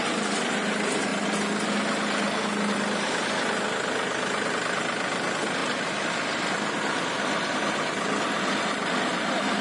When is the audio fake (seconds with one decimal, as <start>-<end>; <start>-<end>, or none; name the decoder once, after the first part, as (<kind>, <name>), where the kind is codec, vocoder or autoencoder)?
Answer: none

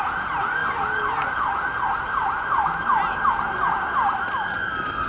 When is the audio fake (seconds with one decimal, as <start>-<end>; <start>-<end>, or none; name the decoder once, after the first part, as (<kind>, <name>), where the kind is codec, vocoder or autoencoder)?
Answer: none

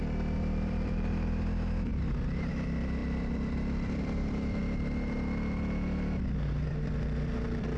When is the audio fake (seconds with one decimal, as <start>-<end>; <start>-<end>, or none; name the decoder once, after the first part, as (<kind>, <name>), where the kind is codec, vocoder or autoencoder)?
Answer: 0.0-1.9 (vocoder, BigVGAN v2); 2.5-4.6; 6.6-7.8

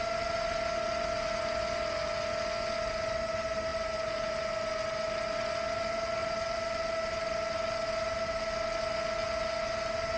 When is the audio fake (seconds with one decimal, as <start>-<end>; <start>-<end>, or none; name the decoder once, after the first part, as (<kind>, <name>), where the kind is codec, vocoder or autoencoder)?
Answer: 3.7-4.5 (vocoder, BigVGAN v2); 6.2-7.1

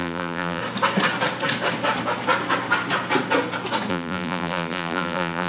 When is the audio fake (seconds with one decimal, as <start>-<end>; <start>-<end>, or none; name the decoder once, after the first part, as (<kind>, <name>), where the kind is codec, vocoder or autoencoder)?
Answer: 0.0-0.6 (vocoder, BigVGAN v2); 3.9-5.5

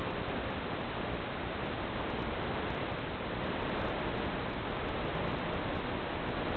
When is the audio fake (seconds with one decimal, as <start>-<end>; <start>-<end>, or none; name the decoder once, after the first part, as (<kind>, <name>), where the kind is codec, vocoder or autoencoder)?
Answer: 0.0-3.7 (vocoder, BigVGAN v2)

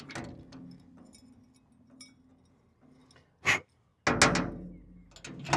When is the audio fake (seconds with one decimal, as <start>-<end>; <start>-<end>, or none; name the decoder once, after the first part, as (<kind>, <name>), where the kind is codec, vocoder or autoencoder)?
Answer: none